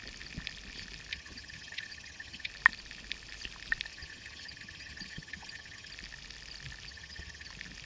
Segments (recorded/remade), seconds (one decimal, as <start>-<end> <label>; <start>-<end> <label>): 0.0-1.1 recorded; 1.1-2.5 remade; 2.5-3.9 recorded; 3.9-5.9 remade; 5.9-6.9 recorded; 6.9-7.5 remade; 7.5-7.9 recorded